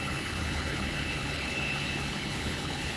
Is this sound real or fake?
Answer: fake